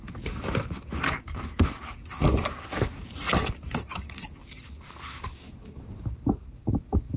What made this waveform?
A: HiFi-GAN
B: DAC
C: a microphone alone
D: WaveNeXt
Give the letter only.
B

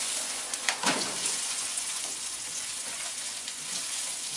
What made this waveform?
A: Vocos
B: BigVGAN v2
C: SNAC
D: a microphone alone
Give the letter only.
A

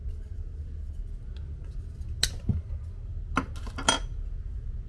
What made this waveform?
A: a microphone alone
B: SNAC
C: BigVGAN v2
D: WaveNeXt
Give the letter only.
A